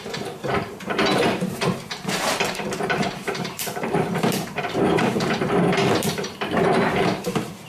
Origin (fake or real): fake